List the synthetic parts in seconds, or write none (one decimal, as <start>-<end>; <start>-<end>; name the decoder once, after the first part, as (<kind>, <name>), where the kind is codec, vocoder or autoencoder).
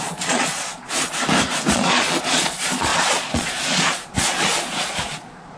0.0-1.2 (vocoder, Vocos); 1.7-5.6